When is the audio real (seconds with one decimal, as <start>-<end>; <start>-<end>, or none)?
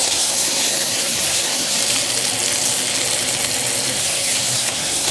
1.8-4.0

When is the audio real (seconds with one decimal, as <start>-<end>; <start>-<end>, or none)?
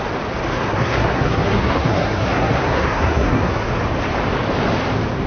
0.0-0.5; 3.7-5.3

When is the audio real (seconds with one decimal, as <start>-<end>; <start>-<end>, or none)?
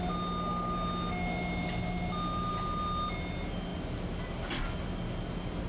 0.0-5.7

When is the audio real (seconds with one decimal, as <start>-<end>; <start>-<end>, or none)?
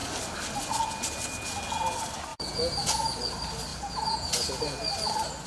0.0-2.3; 2.9-3.7; 4.3-5.5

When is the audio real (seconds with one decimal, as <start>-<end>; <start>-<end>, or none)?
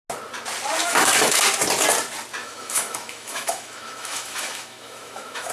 0.0-0.8; 1.4-2.4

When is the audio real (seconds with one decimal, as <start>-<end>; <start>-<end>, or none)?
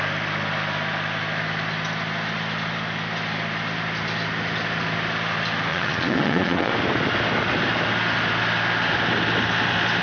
0.0-5.7; 6.7-10.0